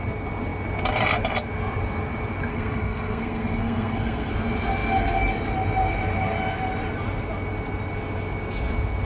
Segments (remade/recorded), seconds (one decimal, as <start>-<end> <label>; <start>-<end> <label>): 0.0-2.5 recorded; 2.5-4.3 remade; 4.3-9.0 recorded